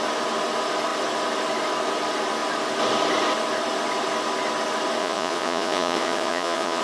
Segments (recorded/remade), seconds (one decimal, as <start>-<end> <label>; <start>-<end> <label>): 0.0-5.0 recorded; 5.0-6.8 remade

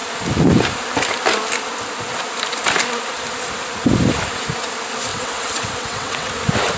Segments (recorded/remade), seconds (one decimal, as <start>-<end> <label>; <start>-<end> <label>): 0.0-5.1 recorded; 5.1-6.3 remade; 6.3-6.8 recorded